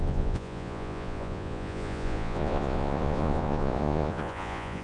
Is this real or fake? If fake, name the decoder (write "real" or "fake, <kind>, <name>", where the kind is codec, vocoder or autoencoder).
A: fake, vocoder, Vocos